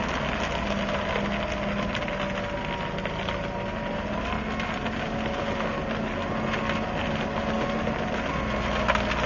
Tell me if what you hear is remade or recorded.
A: recorded